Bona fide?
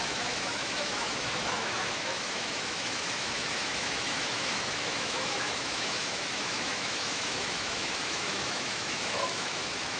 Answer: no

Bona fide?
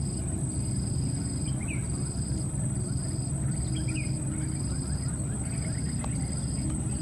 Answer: yes